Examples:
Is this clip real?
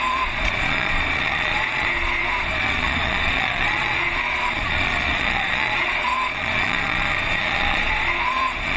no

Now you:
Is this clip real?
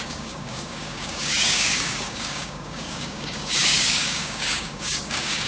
no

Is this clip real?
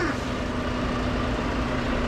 yes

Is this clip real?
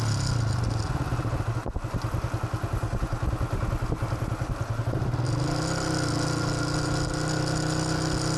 yes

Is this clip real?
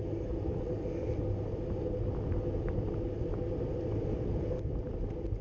yes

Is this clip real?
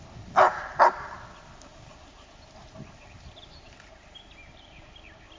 yes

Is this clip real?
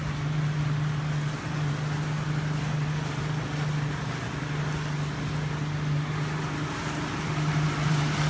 yes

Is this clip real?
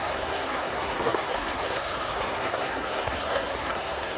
no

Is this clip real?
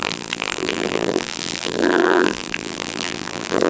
no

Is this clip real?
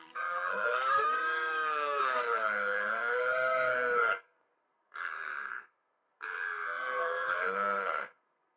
no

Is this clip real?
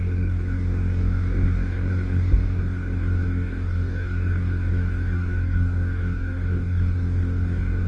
no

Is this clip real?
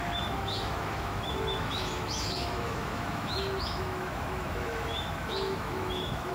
no